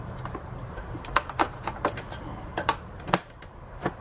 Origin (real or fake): fake